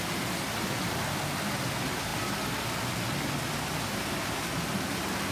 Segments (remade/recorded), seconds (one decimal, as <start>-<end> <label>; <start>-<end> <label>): 0.0-5.3 recorded